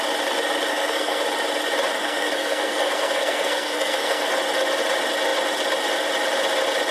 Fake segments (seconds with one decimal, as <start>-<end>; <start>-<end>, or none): 0.7-1.2; 2.0-4.3